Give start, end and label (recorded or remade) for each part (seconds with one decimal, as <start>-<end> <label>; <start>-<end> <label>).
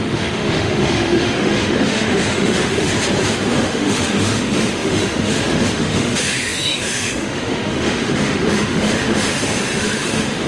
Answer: 0.0-2.9 remade; 2.9-3.5 recorded; 3.5-10.5 remade